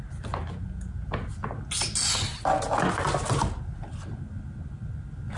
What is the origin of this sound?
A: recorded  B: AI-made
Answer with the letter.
A